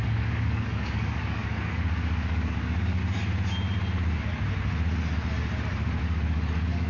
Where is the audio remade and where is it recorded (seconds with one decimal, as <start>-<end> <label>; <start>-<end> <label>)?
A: 0.0-3.0 remade; 3.0-6.0 recorded; 6.0-6.9 remade